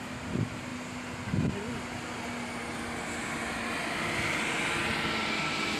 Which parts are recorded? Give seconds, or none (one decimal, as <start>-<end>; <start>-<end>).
0.0-5.8